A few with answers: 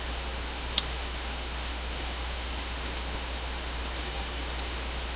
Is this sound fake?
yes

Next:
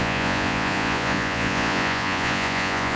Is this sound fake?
yes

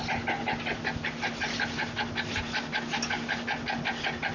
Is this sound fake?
no